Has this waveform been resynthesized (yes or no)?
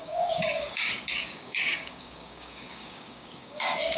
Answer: yes